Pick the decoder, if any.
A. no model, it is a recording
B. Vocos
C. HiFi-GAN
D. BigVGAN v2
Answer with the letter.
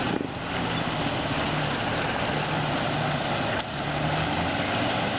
A